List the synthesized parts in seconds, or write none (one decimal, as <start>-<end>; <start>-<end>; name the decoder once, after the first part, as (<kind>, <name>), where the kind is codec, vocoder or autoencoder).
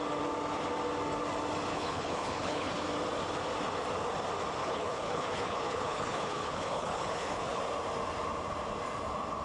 1.7-2.7 (codec, HILCodec); 4.6-7.6